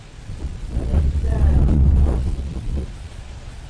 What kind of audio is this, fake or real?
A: fake